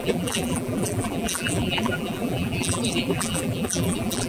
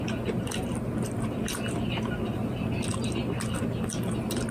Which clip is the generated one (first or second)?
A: first